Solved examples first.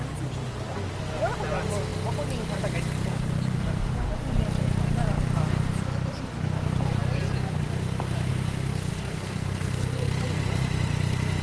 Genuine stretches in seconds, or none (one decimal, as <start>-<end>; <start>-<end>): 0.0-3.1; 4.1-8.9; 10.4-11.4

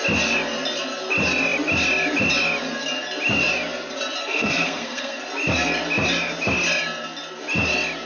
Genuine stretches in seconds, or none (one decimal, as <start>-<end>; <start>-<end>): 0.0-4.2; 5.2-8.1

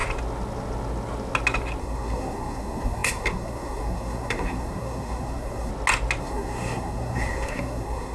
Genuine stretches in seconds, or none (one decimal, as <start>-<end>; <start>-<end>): 0.0-1.8; 5.7-6.2

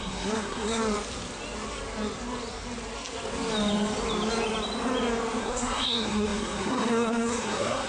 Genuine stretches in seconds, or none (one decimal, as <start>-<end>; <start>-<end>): 0.8-5.4

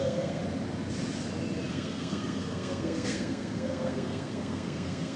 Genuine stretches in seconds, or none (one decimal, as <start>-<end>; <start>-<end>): 0.4-1.7